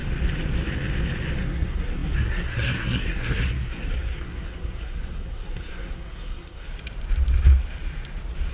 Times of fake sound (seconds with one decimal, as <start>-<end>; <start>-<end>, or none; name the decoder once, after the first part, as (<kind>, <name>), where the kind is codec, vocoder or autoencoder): 1.4-6.7 (codec, SNAC)